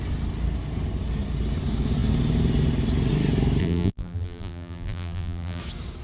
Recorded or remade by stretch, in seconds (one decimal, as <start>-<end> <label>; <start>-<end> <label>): 0.0-3.6 recorded; 3.6-5.6 remade; 5.6-6.0 recorded